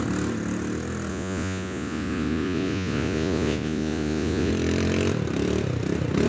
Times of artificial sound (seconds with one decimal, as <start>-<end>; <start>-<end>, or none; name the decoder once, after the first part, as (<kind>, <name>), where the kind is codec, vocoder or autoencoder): 1.1-4.5 (vocoder, Vocos)